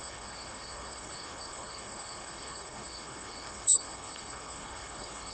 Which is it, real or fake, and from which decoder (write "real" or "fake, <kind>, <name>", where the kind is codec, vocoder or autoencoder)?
fake, codec, HILCodec